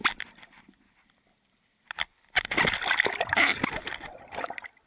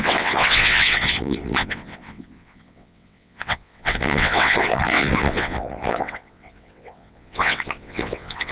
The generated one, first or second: second